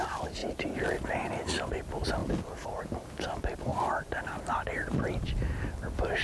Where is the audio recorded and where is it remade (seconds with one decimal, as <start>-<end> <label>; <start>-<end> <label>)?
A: 0.0-0.4 recorded; 0.4-1.7 remade; 1.7-3.7 recorded; 3.7-5.3 remade; 5.3-6.2 recorded